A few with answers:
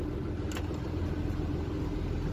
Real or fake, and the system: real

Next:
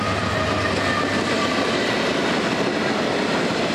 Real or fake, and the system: real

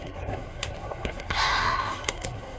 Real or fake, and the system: fake, codec, SNAC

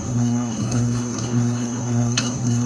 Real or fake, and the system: fake, codec, SNAC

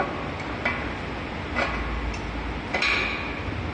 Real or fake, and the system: real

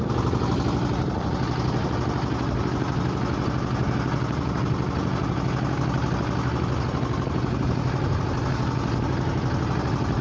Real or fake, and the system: real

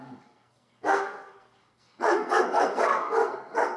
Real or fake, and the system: fake, codec, SNAC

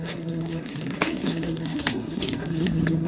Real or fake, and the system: fake, codec, SNAC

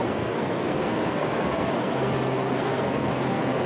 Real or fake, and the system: fake, codec, SNAC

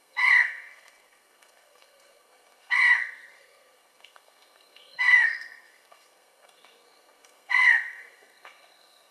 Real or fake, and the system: fake, codec, SNAC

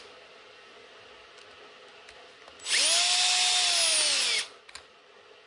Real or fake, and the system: real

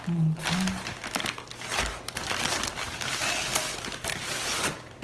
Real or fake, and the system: real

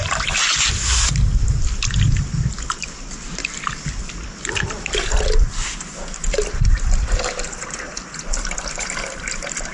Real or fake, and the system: real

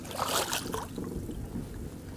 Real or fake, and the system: real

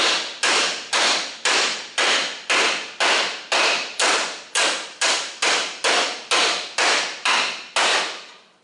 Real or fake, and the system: real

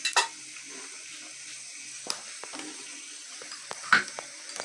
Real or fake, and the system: real